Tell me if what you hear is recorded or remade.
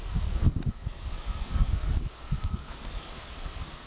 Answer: remade